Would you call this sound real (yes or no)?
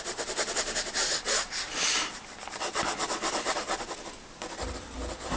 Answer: yes